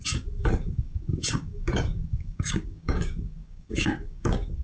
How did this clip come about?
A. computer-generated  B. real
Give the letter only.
A